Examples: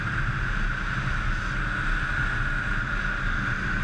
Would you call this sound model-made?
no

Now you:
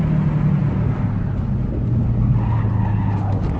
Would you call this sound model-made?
no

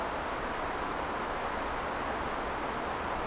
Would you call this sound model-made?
no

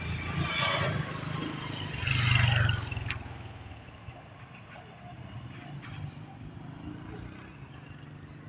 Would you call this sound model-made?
no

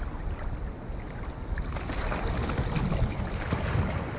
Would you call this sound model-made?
no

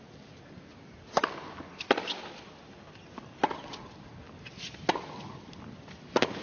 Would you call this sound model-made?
no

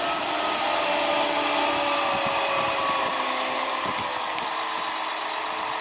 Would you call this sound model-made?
no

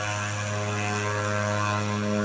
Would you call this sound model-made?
no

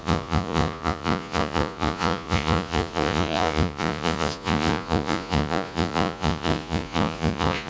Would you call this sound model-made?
yes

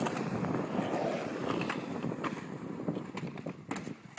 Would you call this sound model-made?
no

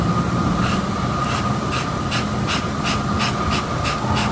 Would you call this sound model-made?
no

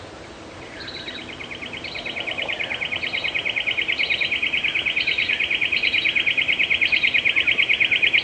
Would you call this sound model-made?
yes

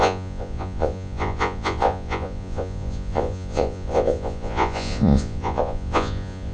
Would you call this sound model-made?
yes